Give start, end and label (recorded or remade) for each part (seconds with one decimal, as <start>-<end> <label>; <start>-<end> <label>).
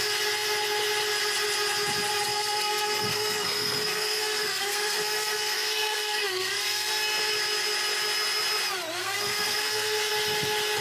0.0-2.3 recorded; 2.3-6.9 remade; 6.9-9.0 recorded; 9.0-10.1 remade; 10.1-10.8 recorded